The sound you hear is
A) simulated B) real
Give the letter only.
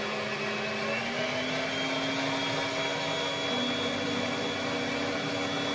B